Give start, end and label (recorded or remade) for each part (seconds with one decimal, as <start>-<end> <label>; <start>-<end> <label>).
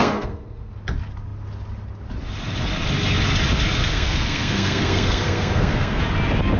0.0-0.7 remade; 0.7-3.8 recorded; 3.8-6.0 remade; 6.0-6.6 recorded